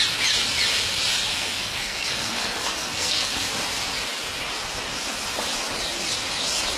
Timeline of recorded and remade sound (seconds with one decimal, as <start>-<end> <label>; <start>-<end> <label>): 0.0-1.3 recorded; 1.3-3.5 remade; 3.5-6.8 recorded